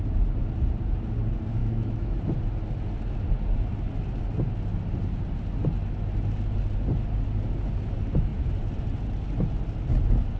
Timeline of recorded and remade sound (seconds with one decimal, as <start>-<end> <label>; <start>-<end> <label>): 0.0-1.6 recorded; 1.6-2.2 remade; 2.2-10.4 recorded